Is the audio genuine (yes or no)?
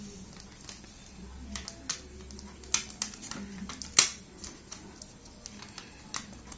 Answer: yes